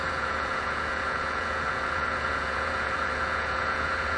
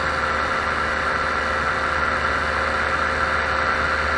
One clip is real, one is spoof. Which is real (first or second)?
second